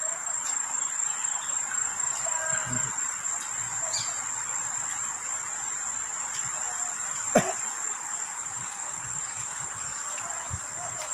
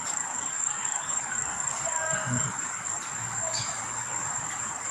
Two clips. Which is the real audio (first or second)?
first